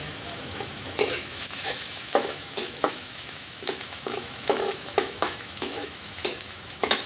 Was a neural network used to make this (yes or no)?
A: yes